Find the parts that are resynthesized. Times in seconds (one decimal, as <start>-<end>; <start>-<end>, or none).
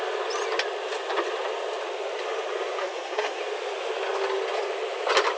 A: 2.8-3.4